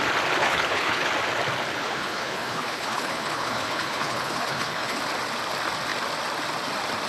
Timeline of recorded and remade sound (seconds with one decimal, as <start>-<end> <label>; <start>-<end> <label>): 0.0-0.4 recorded; 0.4-1.1 remade; 1.1-1.7 recorded; 1.7-5.0 remade; 5.0-7.1 recorded